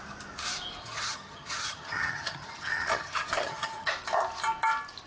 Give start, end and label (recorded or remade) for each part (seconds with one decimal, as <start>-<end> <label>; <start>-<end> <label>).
0.0-0.8 recorded; 0.8-3.9 remade; 3.9-5.1 recorded